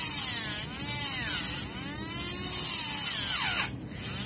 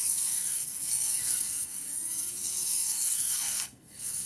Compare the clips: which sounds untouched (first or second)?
first